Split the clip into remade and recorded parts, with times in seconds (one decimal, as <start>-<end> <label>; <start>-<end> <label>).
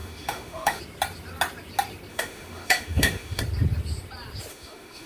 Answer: 0.0-0.8 remade; 0.8-2.1 recorded; 2.1-3.4 remade; 3.4-4.5 recorded; 4.5-5.1 remade